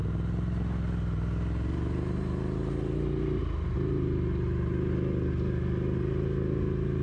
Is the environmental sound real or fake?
real